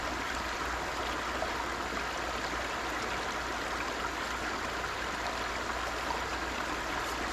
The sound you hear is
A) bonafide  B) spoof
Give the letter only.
A